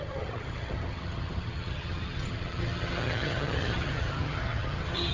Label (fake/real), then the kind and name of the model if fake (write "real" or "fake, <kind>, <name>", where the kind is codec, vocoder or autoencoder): fake, vocoder, HiFi-GAN